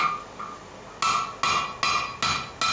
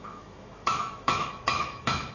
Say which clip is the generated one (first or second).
second